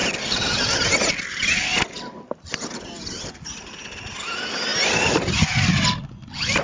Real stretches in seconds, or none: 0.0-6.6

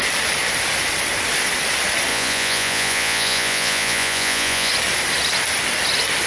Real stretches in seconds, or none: 0.0-2.1; 4.7-6.3

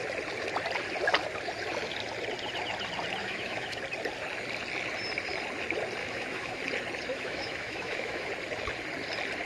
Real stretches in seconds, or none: 0.0-3.2; 3.8-6.0; 6.6-7.1; 8.3-9.5

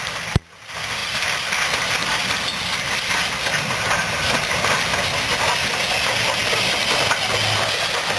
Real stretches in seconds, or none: 0.0-8.2